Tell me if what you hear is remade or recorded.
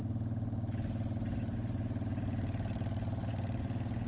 recorded